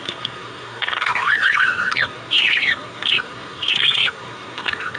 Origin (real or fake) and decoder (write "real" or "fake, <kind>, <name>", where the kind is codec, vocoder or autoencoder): fake, codec, SNAC